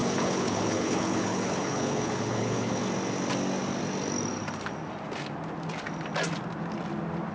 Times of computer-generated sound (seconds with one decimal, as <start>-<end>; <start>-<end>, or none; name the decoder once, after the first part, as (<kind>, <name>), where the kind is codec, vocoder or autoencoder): 0.0-2.8 (codec, HILCodec)